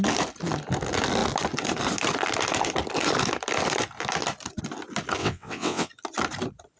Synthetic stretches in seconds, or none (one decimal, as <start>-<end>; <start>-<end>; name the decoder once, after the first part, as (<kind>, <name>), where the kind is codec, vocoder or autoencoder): 5.2-5.9 (vocoder, WaveNeXt)

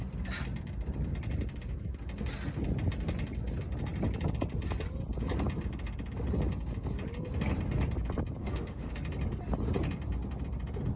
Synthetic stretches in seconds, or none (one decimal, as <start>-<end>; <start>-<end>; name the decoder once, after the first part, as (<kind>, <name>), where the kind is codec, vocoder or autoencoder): 8.4-8.9 (autoencoder, DAC-VAE)

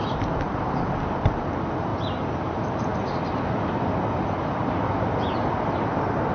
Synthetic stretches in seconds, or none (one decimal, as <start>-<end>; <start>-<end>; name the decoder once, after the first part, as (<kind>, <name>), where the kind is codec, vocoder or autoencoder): none

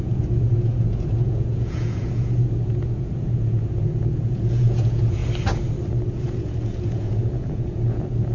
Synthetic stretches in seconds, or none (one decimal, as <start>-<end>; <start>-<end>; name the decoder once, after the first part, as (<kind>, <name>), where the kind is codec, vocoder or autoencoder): 0.0-5.2 (vocoder, Vocos); 6.1-8.3

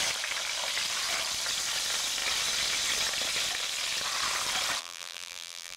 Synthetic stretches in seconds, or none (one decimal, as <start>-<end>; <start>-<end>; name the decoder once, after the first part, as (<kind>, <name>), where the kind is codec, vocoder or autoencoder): 4.8-5.8 (vocoder, BigVGAN v2)

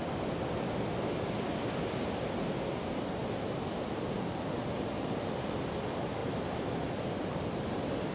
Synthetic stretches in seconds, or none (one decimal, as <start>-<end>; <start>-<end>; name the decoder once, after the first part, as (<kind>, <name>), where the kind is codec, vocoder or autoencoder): none